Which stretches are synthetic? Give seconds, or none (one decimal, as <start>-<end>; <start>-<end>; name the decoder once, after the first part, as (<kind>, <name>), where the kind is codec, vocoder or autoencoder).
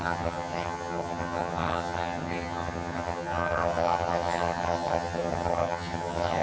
0.0-6.4 (vocoder, HiFi-GAN)